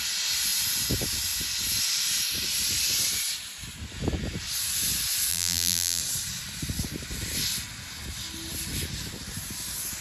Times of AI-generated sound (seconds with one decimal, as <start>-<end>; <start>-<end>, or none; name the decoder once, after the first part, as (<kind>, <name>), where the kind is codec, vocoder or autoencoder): 5.3-6.0 (vocoder, BigVGAN v2)